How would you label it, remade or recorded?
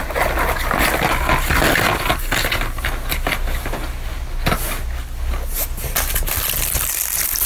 recorded